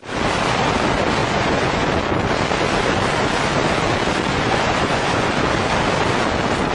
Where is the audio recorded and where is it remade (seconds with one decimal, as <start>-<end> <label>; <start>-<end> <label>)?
0.0-1.2 recorded; 1.2-1.9 remade; 1.9-4.3 recorded; 4.3-5.3 remade; 5.3-6.7 recorded